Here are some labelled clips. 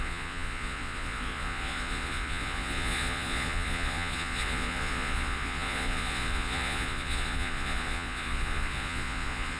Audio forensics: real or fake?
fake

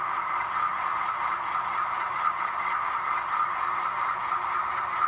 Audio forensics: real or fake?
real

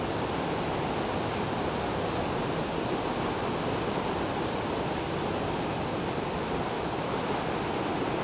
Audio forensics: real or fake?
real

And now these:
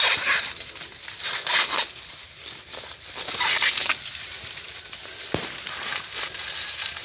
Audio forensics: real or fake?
real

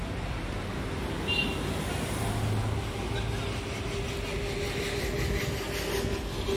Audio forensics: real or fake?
real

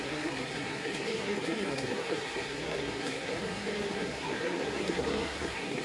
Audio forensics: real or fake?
fake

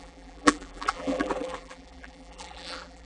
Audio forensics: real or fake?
fake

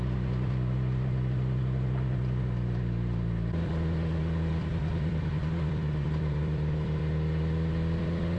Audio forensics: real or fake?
fake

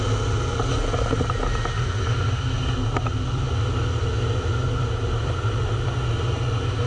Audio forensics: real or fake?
real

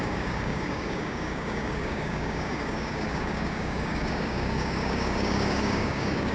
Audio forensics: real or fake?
fake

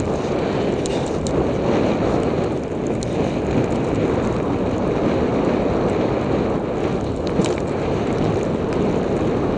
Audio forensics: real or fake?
real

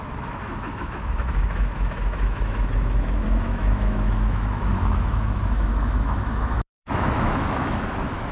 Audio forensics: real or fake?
fake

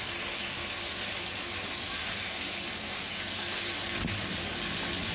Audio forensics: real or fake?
real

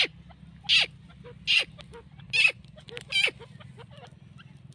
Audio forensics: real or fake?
real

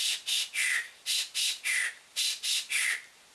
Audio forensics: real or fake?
real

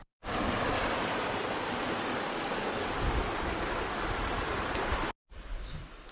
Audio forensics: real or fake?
real